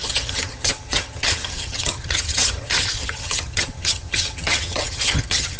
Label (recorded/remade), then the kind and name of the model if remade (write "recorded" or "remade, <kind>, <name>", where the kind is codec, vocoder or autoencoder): remade, vocoder, HiFi-GAN